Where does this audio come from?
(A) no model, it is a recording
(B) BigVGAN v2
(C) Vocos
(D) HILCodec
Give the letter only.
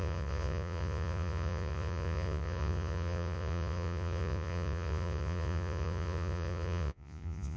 C